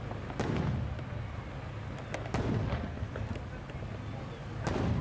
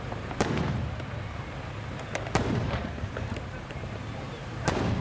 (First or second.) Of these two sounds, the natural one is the first